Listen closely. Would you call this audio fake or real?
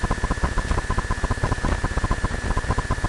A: real